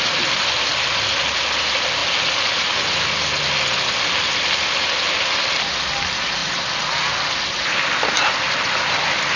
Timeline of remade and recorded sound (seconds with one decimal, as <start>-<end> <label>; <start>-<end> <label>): 0.0-9.4 recorded